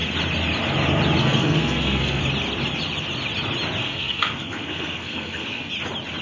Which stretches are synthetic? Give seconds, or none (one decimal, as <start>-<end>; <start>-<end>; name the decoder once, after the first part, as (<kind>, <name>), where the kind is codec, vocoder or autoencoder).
1.2-2.2 (codec, SNAC); 3.8-5.7